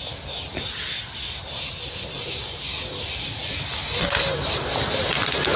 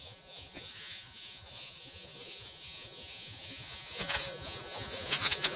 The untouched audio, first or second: first